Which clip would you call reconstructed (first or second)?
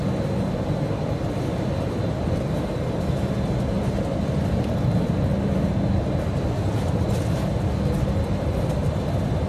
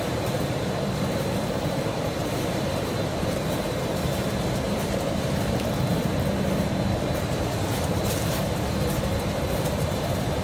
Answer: second